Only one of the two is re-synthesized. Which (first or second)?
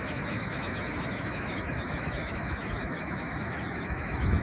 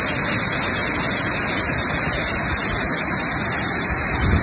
first